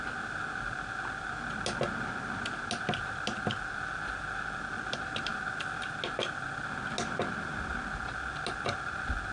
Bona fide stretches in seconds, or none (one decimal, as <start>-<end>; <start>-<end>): 0.0-9.3